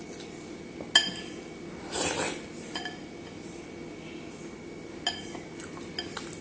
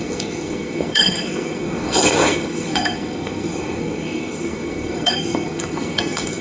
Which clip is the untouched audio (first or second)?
first